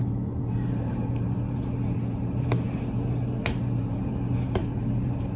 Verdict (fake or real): fake